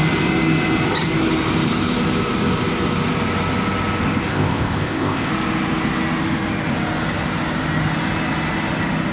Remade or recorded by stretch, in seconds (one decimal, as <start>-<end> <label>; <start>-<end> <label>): 0.0-4.3 recorded; 4.3-5.3 remade; 5.3-9.1 recorded